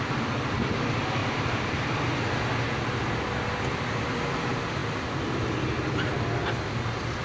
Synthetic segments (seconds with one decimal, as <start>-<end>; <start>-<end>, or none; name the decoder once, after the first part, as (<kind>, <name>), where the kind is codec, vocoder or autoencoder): 1.2-2.4 (vocoder, BigVGAN v2)